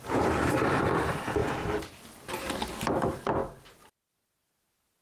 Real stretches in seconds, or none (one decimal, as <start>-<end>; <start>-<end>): 0.0-5.0